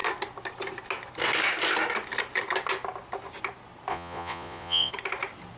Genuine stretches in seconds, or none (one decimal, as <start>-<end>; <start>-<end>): 0.0-3.9; 4.9-5.6